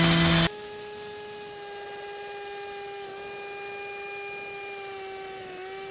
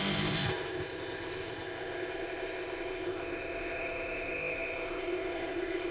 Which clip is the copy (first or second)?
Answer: second